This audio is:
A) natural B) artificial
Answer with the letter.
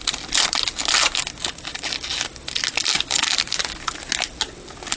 A